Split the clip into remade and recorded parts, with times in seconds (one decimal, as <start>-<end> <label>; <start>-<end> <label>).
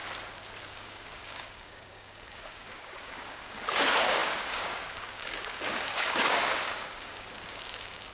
0.0-0.6 recorded; 0.6-8.1 remade